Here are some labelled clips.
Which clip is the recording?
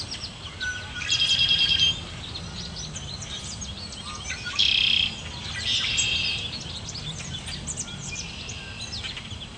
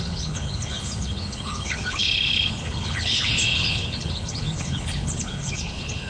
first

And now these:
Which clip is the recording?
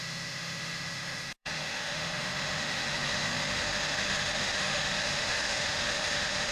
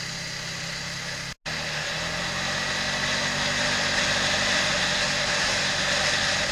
second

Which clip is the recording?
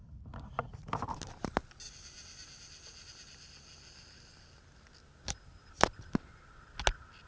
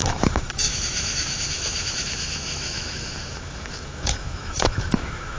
first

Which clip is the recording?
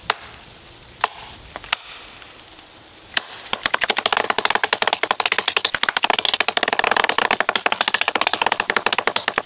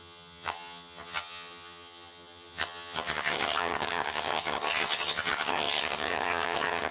first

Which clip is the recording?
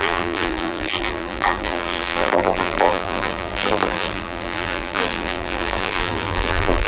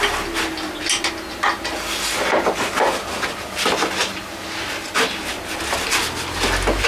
second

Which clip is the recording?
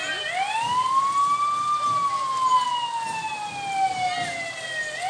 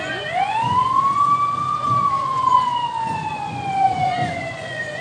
first